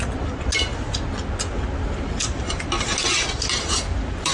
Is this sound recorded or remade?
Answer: recorded